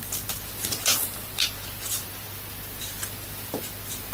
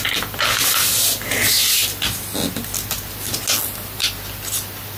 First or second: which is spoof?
first